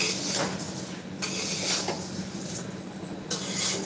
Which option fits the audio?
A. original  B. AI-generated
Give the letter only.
A